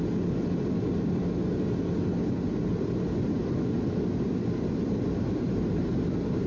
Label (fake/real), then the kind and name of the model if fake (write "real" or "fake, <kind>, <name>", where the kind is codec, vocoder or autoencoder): real